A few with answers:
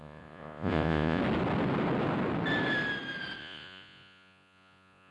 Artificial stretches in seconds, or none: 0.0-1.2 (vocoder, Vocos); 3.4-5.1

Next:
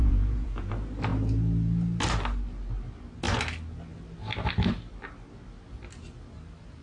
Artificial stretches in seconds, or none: 0.0-0.7 (vocoder, Vocos)

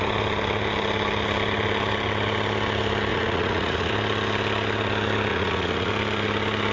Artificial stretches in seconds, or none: 3.1-3.9 (vocoder, Vocos); 5.3-5.9

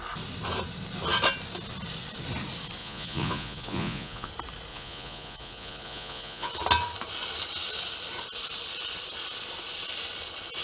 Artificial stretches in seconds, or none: 2.8-4.3 (vocoder, Vocos); 4.7-6.5

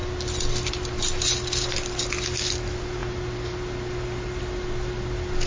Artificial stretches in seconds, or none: none

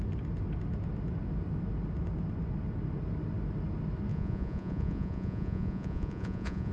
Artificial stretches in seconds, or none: 4.1-6.7 (vocoder, Vocos)

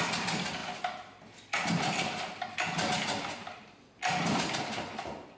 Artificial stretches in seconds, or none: none